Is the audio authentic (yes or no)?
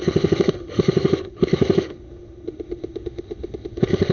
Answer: no